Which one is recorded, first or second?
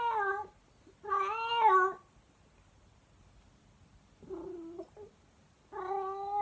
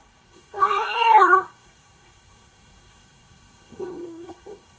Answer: first